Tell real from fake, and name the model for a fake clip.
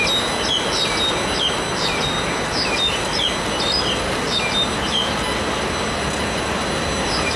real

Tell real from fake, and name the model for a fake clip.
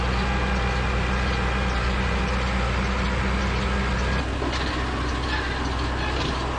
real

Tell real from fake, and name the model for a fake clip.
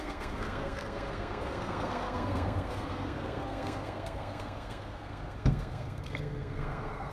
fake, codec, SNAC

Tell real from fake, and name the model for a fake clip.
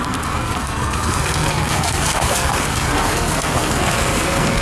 fake, codec, SNAC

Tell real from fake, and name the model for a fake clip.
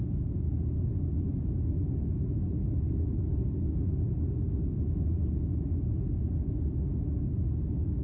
real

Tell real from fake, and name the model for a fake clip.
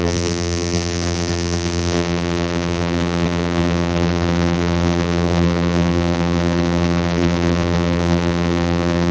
fake, vocoder, BigVGAN v2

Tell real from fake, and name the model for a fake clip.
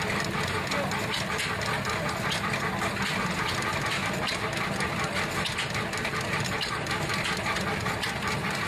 real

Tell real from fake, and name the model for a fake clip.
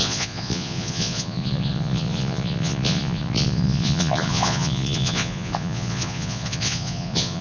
fake, vocoder, Vocos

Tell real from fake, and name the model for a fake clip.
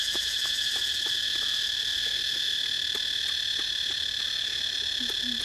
real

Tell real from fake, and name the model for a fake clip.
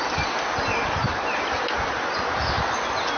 real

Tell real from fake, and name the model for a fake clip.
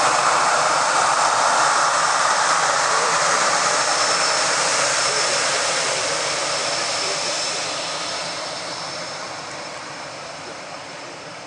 fake, vocoder, BigVGAN v2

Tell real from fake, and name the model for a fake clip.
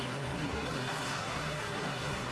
fake, codec, SNAC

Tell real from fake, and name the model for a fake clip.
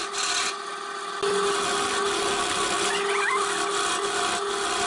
real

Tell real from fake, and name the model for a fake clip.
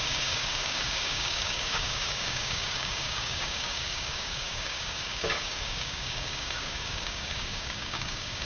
fake, codec, DAC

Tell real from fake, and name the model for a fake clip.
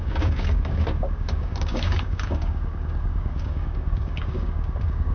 fake, codec, DAC